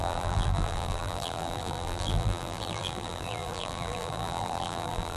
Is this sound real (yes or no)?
no